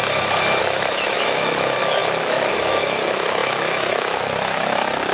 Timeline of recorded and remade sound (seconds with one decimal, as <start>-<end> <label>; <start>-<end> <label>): 0.0-0.6 recorded; 0.6-5.1 remade

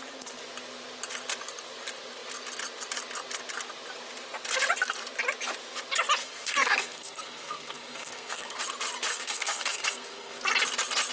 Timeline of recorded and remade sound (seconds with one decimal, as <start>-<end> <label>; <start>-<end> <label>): 0.0-6.2 recorded; 6.2-8.6 remade; 8.6-9.1 recorded; 9.1-10.4 remade; 10.4-11.1 recorded

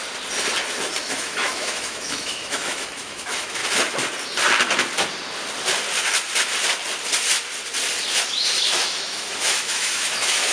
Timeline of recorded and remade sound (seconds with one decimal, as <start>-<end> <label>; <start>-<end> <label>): 0.0-1.0 recorded; 1.0-3.6 remade; 3.6-8.2 recorded; 8.2-10.5 remade

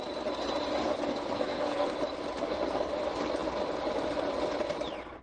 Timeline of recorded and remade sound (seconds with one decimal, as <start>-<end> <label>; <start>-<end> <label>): 0.0-1.1 recorded; 1.1-2.0 remade; 2.0-2.4 recorded; 2.4-2.9 remade; 2.9-5.2 recorded

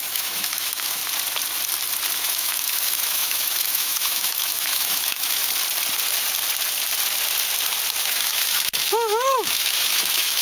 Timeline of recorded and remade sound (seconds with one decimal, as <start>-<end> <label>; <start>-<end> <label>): 0.0-1.0 remade; 1.0-2.2 recorded; 2.2-5.4 remade; 5.4-8.0 recorded; 8.0-10.4 remade

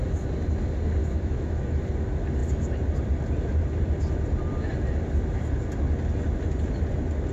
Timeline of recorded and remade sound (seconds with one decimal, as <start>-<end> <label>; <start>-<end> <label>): 0.0-1.0 recorded; 1.0-1.8 remade; 1.8-7.3 recorded

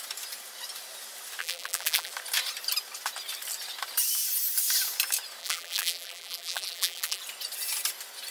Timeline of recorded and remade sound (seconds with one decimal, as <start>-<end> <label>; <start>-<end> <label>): 0.0-1.4 recorded; 1.4-2.1 remade; 2.1-5.4 recorded; 5.4-7.2 remade; 7.2-8.3 recorded

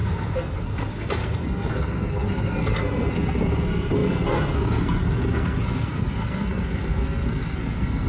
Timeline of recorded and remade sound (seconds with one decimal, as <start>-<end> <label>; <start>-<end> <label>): 0.0-8.1 remade